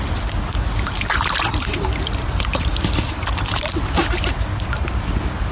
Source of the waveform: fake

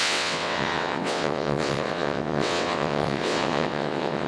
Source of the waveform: fake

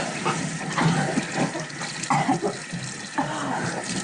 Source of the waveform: real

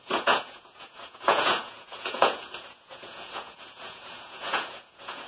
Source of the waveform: fake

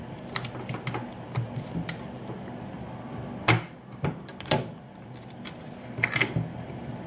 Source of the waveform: real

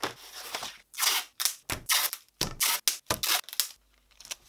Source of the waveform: real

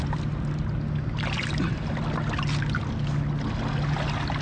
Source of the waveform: real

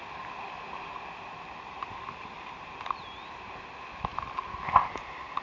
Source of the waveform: real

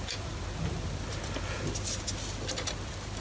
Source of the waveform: real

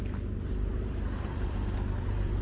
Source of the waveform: fake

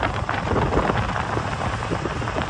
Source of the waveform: real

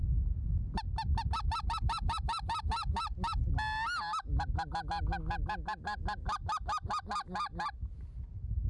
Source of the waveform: real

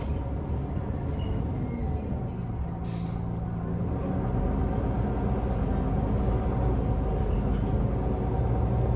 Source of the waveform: real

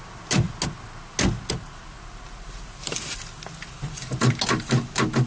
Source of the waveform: real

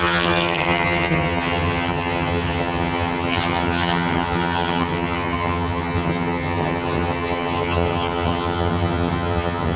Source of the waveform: fake